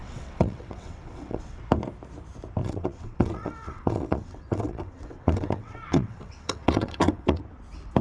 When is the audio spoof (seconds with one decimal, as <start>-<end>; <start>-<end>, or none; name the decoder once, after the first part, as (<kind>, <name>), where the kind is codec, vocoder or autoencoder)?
0.0-1.6 (vocoder, WaveNeXt); 2.6-7.4